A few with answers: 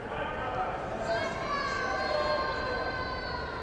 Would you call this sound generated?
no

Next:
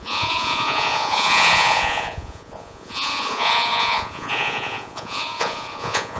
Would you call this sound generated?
yes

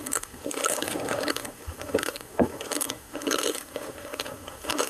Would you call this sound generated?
yes